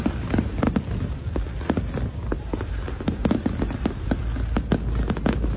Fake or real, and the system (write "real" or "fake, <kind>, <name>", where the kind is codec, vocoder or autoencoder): real